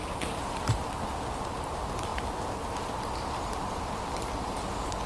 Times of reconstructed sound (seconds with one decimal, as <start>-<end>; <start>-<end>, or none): 0.0-1.5; 2.1-3.9